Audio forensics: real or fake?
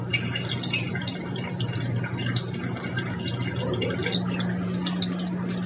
real